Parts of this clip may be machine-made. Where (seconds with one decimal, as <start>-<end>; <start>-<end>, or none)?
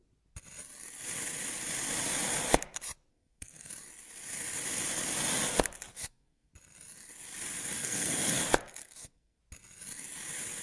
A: 3.1-3.7; 5.9-6.5; 7.8-8.4; 8.8-9.4